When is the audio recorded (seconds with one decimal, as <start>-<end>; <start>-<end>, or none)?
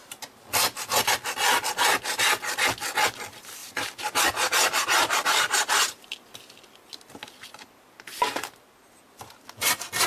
0.0-3.6; 5.7-10.1